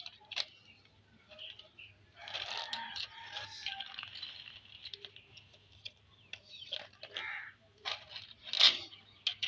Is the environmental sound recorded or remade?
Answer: recorded